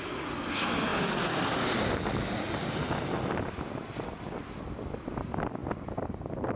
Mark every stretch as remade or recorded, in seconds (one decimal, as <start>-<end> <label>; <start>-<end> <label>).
0.0-6.6 recorded